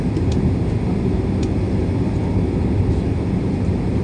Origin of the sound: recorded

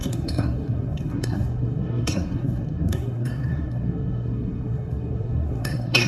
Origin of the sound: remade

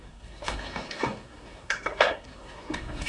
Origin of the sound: remade